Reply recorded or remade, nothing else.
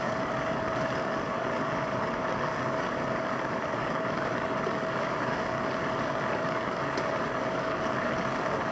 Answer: remade